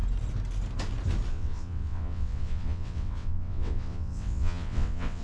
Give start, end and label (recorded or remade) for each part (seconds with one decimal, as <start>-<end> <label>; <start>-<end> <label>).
0.0-1.3 recorded; 1.3-5.2 remade